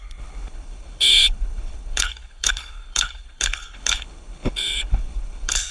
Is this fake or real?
fake